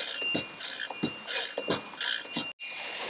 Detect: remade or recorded recorded